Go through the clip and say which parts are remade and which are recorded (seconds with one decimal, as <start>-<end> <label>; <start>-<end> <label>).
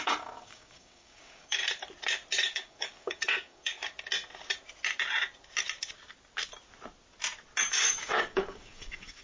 0.0-1.6 remade; 1.6-2.4 recorded; 2.4-3.8 remade; 3.8-7.7 recorded; 7.7-9.2 remade